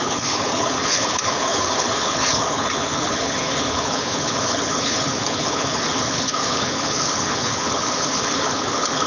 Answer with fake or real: fake